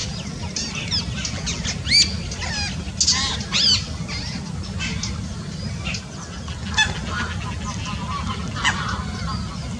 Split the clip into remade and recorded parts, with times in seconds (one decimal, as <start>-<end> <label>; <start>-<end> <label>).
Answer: 0.0-9.8 recorded